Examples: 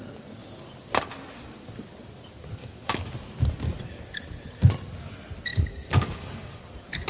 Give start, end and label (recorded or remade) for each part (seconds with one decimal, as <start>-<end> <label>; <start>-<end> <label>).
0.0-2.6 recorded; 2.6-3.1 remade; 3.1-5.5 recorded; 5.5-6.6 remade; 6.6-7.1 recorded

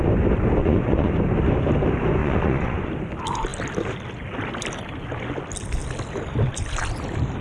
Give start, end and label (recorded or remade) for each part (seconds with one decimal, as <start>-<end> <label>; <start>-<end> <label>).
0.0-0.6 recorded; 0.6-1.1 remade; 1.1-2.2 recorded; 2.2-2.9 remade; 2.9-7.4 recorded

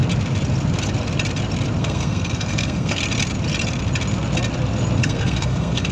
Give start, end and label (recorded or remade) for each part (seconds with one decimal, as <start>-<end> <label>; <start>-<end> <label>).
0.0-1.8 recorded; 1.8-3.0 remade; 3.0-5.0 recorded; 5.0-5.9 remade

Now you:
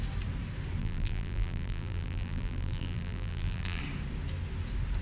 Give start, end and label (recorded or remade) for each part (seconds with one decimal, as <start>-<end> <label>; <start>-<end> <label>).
0.0-0.8 recorded; 0.8-3.8 remade; 3.8-5.0 recorded